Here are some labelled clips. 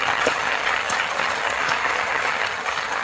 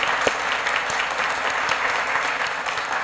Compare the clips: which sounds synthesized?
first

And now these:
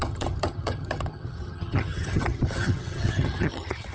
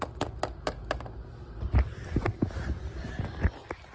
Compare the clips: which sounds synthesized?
first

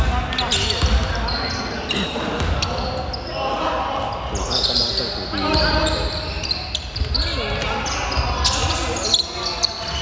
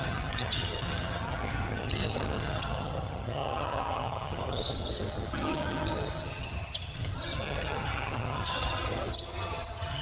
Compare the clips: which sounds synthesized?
second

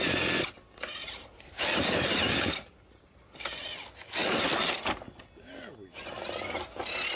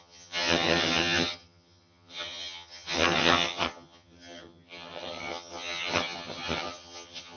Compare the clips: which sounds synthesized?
second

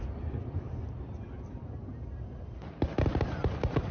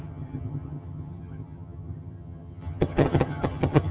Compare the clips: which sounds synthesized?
second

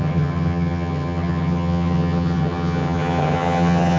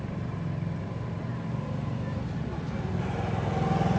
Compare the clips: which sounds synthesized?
first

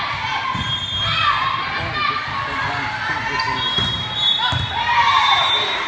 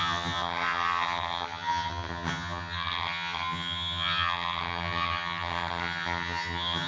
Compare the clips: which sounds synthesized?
second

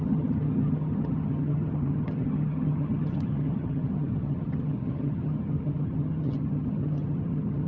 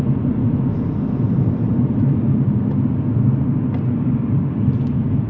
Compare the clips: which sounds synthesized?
first